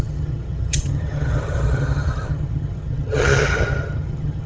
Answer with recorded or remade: remade